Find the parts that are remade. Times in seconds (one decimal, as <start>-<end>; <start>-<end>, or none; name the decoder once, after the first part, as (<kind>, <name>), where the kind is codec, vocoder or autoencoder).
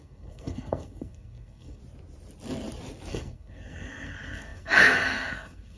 0.0-1.8 (codec, SNAC); 3.1-5.8